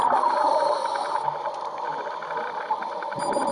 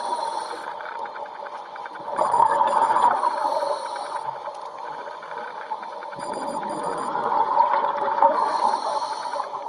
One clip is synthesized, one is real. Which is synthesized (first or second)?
second